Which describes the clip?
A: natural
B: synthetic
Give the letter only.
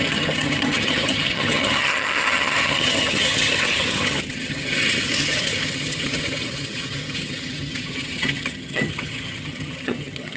B